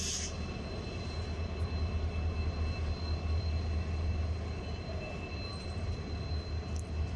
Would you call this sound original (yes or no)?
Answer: yes